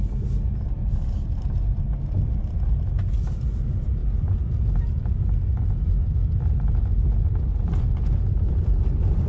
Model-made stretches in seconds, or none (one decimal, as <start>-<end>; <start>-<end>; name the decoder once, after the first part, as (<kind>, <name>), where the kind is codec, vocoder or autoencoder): none